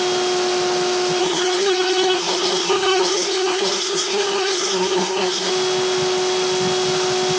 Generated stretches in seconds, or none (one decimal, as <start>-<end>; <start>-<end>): 1.2-5.5